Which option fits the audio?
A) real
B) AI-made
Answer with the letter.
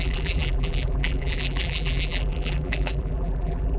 B